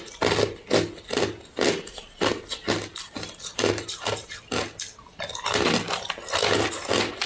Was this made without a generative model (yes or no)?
yes